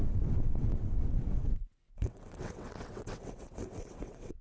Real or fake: fake